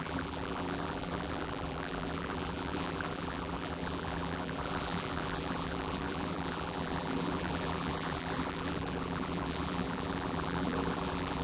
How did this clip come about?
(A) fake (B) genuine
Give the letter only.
A